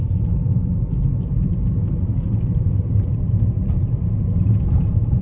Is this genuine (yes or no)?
no